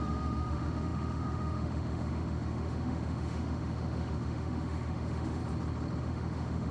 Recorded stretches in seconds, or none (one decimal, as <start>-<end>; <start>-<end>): 5.4-6.0